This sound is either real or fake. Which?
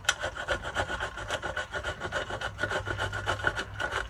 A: real